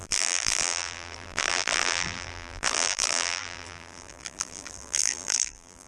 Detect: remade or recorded remade